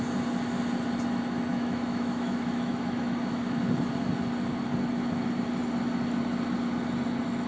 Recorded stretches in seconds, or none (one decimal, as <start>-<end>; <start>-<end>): 0.0-1.5; 3.6-7.5